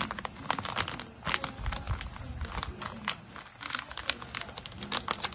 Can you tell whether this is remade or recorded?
recorded